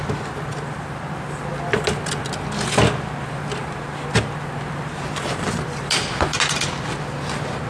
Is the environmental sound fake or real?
real